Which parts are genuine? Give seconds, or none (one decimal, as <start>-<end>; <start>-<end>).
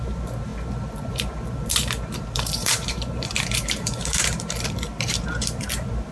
0.5-1.1